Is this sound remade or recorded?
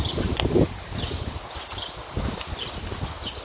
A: recorded